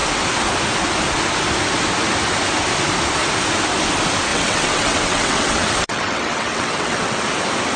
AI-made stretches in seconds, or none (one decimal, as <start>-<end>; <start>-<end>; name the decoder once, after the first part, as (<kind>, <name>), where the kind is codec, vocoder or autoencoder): 4.3-7.2 (vocoder, WaveNeXt)